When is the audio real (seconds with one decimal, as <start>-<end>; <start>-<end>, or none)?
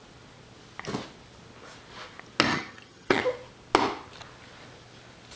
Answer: 0.0-2.5; 3.2-5.4